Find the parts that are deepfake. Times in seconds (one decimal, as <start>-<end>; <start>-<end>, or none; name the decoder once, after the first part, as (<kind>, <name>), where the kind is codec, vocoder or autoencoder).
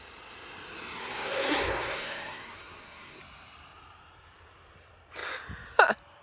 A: 1.0-3.2 (codec, SNAC)